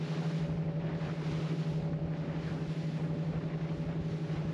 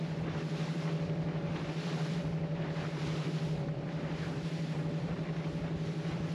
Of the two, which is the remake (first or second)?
second